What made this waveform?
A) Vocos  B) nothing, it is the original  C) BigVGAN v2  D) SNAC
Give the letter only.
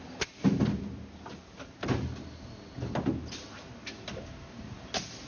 B